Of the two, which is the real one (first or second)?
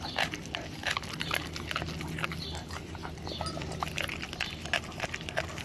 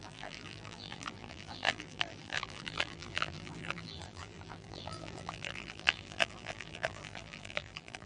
first